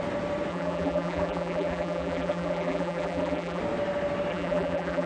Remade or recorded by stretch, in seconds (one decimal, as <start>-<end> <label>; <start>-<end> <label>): 0.0-0.5 recorded; 0.5-3.6 remade; 3.6-4.3 recorded; 4.3-5.1 remade